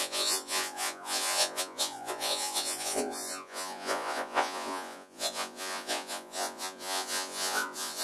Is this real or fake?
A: fake